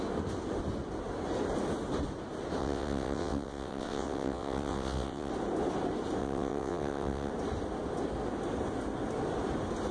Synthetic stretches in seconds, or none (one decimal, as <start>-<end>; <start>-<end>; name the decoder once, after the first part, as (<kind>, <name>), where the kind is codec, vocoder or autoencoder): 2.6-5.3 (vocoder, WaveNeXt); 6.2-7.3